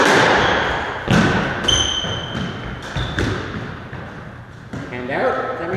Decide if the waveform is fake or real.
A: real